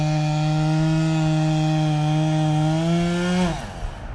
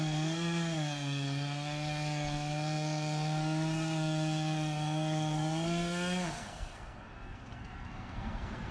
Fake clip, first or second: second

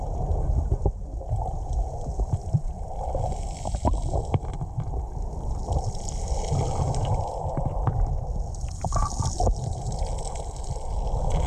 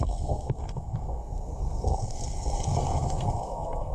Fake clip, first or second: second